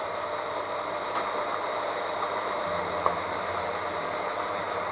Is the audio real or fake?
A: fake